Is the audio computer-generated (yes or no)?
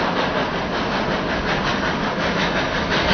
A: no